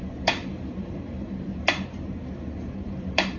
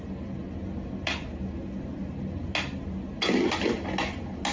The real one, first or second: second